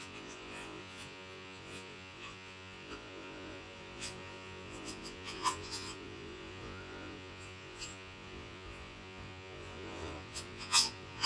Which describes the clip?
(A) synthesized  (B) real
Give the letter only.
A